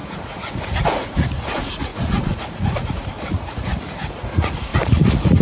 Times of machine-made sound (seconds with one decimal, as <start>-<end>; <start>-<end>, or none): 0.0-5.4